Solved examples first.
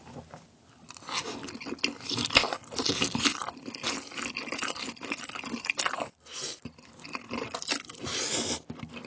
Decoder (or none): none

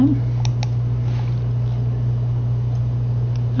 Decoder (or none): none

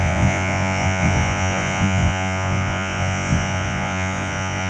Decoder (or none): vocoder, Vocos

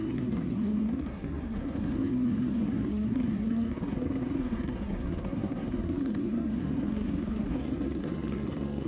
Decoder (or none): codec, SNAC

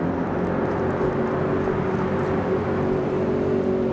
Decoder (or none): none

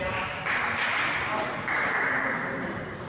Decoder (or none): none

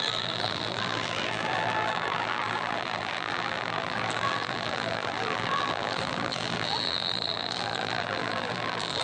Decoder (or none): vocoder, BigVGAN v2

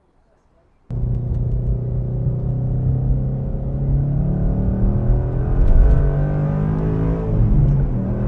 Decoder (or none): none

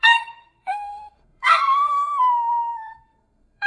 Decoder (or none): codec, SNAC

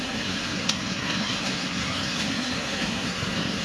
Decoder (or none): codec, SNAC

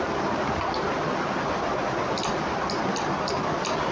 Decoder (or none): none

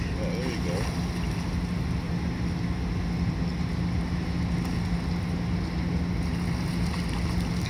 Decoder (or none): none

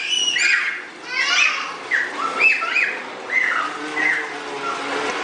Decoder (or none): none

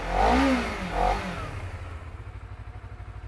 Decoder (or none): none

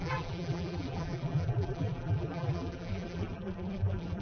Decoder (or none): vocoder, BigVGAN v2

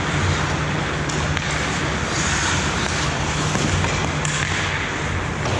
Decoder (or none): none